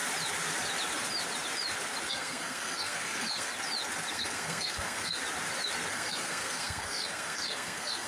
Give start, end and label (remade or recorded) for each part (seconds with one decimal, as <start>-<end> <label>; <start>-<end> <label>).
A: 0.0-2.1 recorded; 2.1-3.5 remade; 3.5-4.1 recorded; 4.1-5.2 remade; 5.2-5.9 recorded; 5.9-8.1 remade

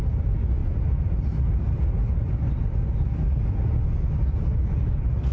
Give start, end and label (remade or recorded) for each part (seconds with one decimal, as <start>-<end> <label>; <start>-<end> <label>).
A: 0.0-5.3 recorded

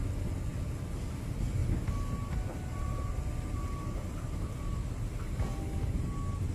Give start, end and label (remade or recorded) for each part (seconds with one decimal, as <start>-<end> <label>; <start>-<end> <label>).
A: 0.0-6.5 recorded

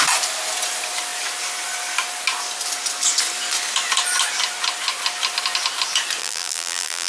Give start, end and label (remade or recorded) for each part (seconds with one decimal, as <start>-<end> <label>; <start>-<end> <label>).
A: 0.0-6.2 recorded; 6.2-7.1 remade

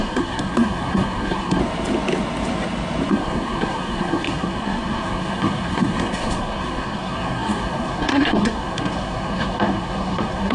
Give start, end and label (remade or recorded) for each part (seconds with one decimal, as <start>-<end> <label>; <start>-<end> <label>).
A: 0.0-1.6 remade; 1.6-3.1 recorded; 3.1-10.5 remade

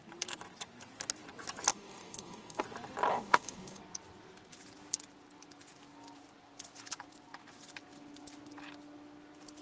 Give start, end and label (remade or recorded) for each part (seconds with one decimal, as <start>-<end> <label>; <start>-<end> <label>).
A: 0.0-1.7 recorded; 1.7-2.6 remade; 2.6-3.1 recorded; 3.1-3.8 remade; 3.8-9.6 recorded

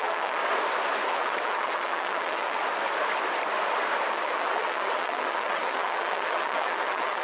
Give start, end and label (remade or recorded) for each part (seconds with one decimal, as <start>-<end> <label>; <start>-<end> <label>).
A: 0.0-0.4 remade; 0.4-1.1 recorded; 1.1-2.6 remade; 2.6-4.1 recorded; 4.1-7.2 remade

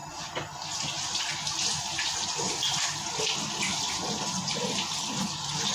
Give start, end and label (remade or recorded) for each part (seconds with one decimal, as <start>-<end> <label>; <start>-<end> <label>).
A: 0.0-5.7 recorded